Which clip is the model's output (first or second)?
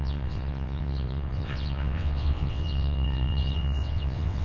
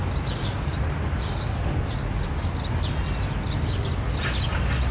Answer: first